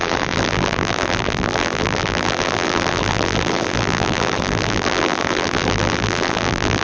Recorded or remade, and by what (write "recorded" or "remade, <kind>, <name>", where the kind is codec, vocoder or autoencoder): remade, vocoder, BigVGAN v2